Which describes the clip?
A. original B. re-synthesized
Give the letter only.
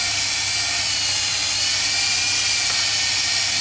A